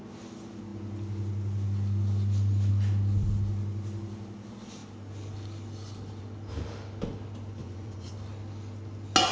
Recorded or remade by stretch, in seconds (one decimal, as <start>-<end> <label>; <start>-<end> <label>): 0.0-7.6 recorded; 7.6-8.1 remade; 8.1-9.3 recorded